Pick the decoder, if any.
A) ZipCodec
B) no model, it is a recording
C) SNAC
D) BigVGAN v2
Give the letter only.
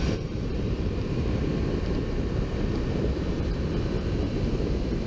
D